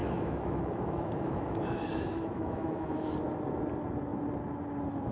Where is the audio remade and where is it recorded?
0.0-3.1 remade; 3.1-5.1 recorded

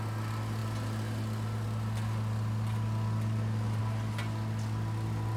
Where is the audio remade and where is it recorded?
0.0-5.4 recorded

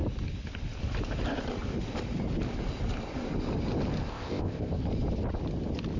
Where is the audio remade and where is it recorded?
0.0-4.1 recorded; 4.1-4.8 remade; 4.8-6.0 recorded

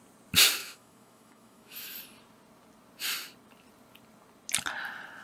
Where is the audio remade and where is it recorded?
0.0-0.6 recorded; 0.6-2.0 remade; 2.0-5.2 recorded

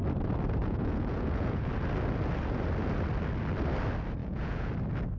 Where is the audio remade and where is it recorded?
0.0-0.6 recorded; 0.6-1.7 remade; 1.7-4.2 recorded; 4.2-4.7 remade; 4.7-5.2 recorded